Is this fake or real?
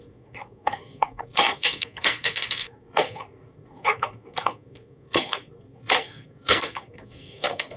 fake